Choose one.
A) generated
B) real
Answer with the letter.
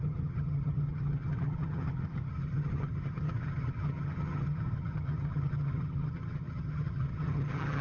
A